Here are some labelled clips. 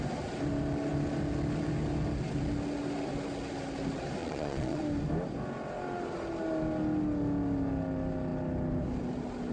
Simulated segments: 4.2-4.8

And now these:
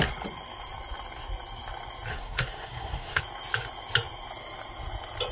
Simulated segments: 2.1-3.2

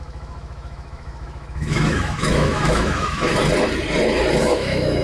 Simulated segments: 0.0-3.4; 4.4-5.0

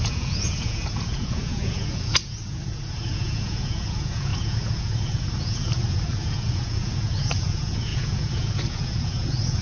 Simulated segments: 0.0-9.6

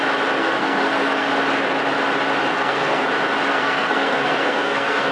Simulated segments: 0.4-1.3; 2.5-3.1; 3.5-5.1

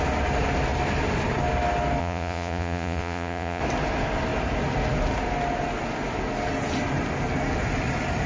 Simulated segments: 2.0-3.6

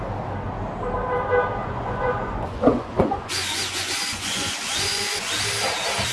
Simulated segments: 1.6-5.3

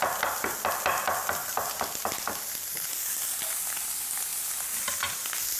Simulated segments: none